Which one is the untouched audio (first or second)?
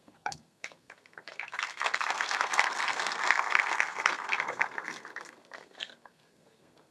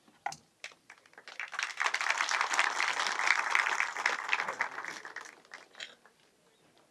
second